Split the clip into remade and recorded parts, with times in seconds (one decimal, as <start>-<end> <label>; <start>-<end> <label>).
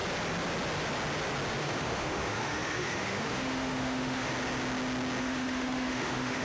0.0-1.6 recorded; 1.6-4.3 remade; 4.3-5.2 recorded; 5.2-6.4 remade